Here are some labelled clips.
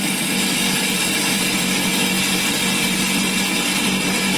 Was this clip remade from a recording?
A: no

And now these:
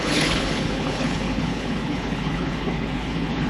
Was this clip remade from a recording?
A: yes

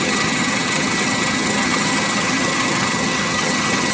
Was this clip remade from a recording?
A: yes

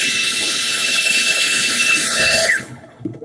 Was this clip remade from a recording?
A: yes